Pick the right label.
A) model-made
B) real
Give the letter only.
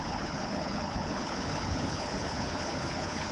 A